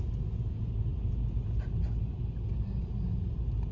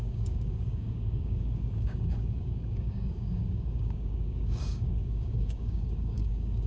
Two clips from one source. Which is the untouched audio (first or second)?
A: first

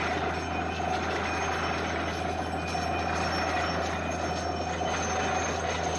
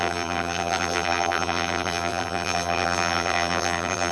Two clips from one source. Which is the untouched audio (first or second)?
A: first